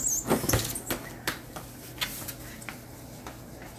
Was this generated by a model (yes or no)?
no